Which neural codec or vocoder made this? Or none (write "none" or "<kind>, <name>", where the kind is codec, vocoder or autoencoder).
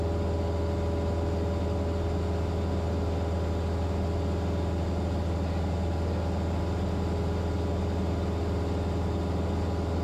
none